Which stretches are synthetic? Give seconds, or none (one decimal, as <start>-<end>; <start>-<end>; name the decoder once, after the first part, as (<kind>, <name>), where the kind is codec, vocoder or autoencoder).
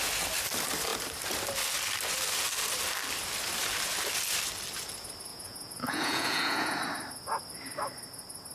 5.3-6.8 (vocoder, Vocos)